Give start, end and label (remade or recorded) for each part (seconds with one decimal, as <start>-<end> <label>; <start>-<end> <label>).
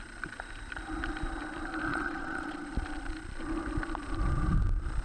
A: 0.0-1.9 recorded; 1.9-2.7 remade; 2.7-5.0 recorded